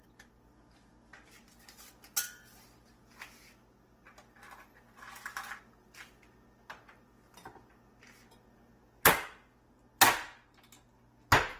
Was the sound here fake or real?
real